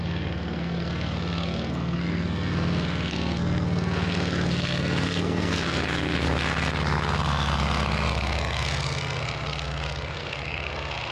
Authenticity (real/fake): fake